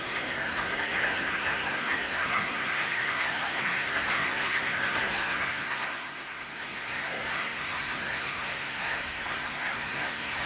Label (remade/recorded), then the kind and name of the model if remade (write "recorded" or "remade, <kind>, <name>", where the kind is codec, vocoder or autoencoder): remade, codec, SNAC